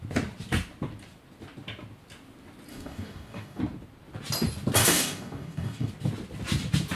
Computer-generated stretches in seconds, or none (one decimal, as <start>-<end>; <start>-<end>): 2.7-3.6; 4.8-5.9